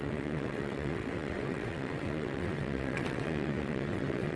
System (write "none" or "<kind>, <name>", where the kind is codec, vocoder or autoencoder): vocoder, WaveNeXt